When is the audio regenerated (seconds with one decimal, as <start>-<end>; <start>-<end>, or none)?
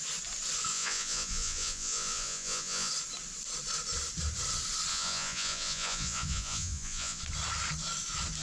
0.7-2.9; 4.9-7.2